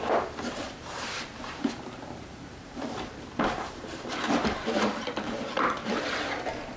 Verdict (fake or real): fake